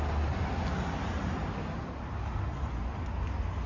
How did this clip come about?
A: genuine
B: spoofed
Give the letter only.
A